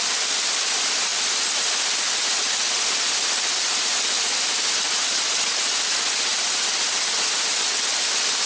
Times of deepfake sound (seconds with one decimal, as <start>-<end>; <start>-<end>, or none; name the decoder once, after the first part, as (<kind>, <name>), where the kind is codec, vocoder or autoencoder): none